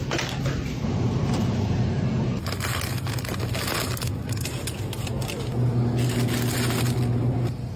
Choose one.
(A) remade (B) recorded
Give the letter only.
B